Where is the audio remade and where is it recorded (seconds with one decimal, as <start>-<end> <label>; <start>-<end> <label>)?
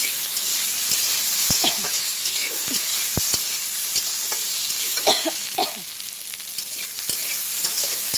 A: 0.0-0.5 remade; 0.5-1.4 recorded; 1.4-2.9 remade; 2.9-4.8 recorded; 4.8-5.6 remade; 5.6-7.6 recorded; 7.6-8.2 remade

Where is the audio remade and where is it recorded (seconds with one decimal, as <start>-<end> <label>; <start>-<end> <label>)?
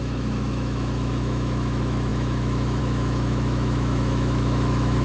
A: 0.0-5.0 remade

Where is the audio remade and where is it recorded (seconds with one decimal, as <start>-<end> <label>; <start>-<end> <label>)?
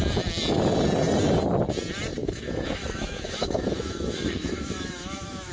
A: 0.0-2.2 recorded; 2.2-5.5 remade